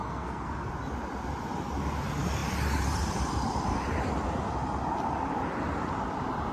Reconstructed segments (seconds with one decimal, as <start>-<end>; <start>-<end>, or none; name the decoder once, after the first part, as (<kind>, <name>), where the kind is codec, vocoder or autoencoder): 0.0-0.7 (codec, SNAC)